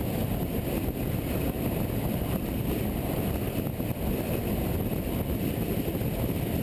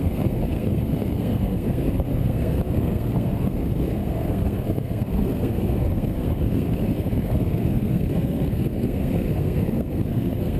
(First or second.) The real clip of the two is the first